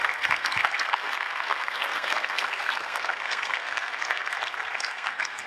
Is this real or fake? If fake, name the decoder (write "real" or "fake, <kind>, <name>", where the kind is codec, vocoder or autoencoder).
fake, codec, SNAC